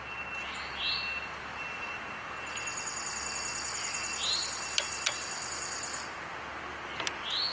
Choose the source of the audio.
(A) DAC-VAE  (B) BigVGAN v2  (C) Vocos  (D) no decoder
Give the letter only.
D